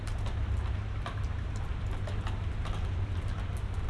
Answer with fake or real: real